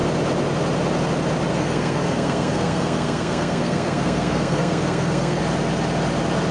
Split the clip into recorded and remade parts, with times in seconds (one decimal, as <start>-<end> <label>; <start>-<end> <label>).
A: 0.0-1.5 recorded; 1.5-5.4 remade; 5.4-6.5 recorded

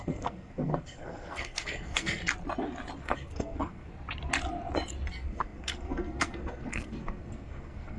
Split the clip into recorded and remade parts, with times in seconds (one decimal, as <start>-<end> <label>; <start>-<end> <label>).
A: 0.0-2.2 remade; 2.2-3.0 recorded; 3.0-3.9 remade; 3.9-5.1 recorded; 5.1-8.0 remade

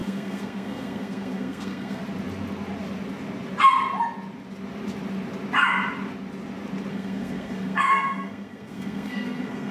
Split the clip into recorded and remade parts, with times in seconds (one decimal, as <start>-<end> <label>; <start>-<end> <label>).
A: 0.0-2.0 remade; 2.0-6.9 recorded; 6.9-9.7 remade

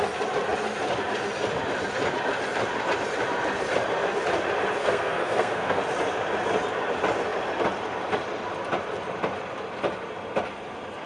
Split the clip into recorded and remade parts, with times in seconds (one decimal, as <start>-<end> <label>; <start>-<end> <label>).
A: 0.0-4.8 recorded; 4.8-5.8 remade; 5.8-11.1 recorded

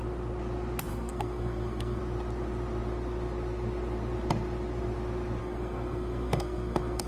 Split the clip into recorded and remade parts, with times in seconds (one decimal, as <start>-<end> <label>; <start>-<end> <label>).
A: 0.0-0.9 recorded; 0.9-2.0 remade; 2.0-5.4 recorded; 5.4-7.1 remade